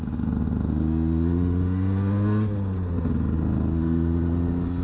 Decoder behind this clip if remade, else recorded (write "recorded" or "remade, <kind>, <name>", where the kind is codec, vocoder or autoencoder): recorded